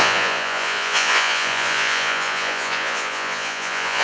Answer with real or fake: fake